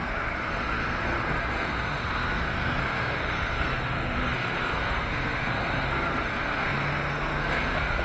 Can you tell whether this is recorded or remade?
remade